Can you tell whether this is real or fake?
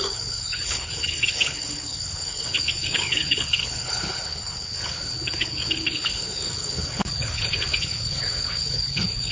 fake